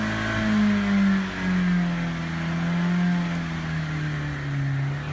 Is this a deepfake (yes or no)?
no